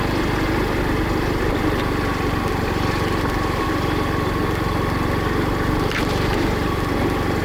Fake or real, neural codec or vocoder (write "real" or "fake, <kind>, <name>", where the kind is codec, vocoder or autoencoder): real